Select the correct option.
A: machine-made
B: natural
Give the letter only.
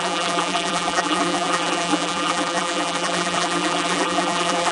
A